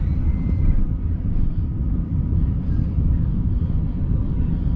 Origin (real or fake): real